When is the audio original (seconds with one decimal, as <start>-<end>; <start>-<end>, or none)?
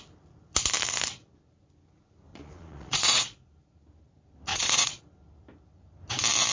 0.0-2.3; 3.5-4.5; 5.0-6.5